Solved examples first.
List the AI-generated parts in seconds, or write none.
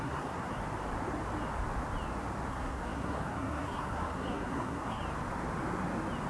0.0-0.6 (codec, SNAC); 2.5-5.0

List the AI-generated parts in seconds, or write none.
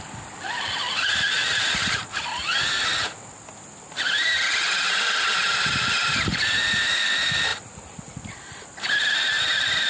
0.0-1.8 (vocoder, BigVGAN v2); 4.6-7.5; 9.4-9.9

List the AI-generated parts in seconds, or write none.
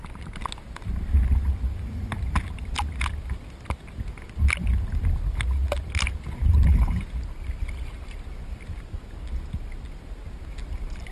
none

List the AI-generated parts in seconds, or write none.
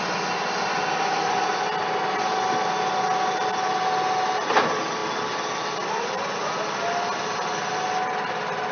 none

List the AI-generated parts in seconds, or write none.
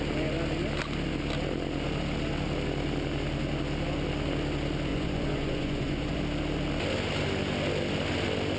4.9-6.2 (vocoder, Vocos)